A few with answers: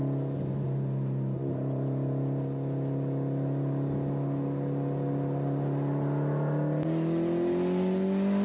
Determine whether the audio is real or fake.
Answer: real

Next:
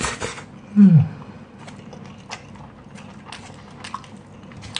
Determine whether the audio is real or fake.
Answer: real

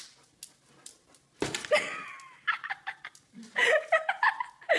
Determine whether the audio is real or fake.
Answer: real